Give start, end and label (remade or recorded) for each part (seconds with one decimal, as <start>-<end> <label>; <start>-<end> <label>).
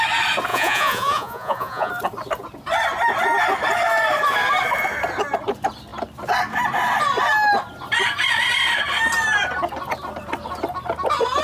0.0-0.5 recorded; 0.5-1.9 remade; 1.9-11.4 recorded